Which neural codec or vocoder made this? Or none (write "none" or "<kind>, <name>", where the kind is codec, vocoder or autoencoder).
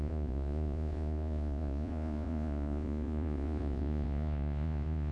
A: vocoder, Vocos